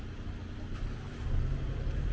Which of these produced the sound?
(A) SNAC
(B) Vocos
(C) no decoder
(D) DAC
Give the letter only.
C